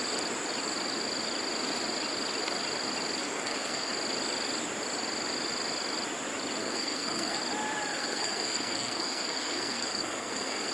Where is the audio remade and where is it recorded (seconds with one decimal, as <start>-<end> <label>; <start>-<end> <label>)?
0.0-3.2 recorded; 3.2-3.9 remade; 3.9-6.6 recorded; 6.6-7.4 remade; 7.4-7.9 recorded; 7.9-10.7 remade